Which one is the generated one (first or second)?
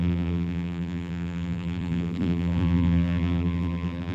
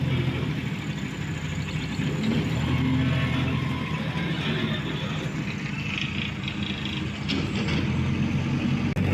first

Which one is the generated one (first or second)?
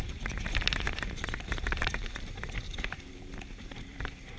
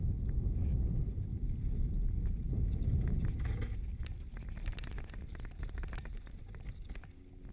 first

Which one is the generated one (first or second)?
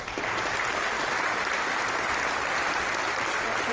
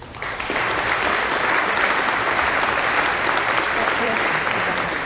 second